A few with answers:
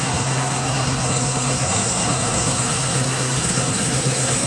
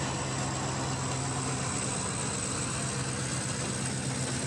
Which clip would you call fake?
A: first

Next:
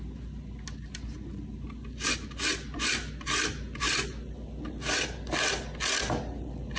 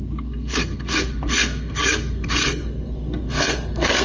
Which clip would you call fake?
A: second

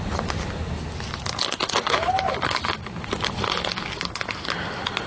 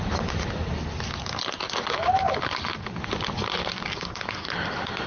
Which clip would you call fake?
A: second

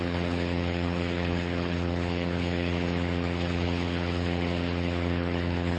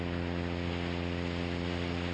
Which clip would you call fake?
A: first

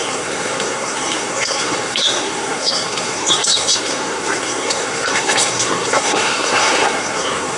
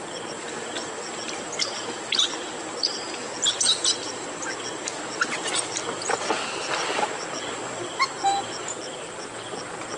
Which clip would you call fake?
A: first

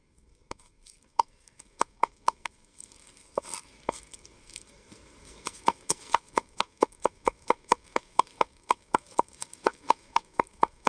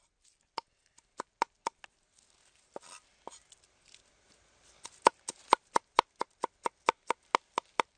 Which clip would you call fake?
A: first